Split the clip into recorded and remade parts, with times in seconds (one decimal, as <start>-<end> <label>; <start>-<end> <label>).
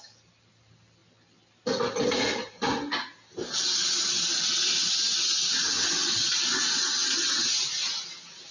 0.0-8.5 recorded